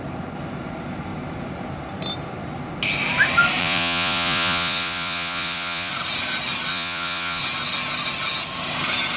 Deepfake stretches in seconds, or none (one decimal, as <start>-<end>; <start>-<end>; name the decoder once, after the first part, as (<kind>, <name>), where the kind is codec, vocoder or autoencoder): 3.6-5.9 (vocoder, Vocos); 6.7-7.4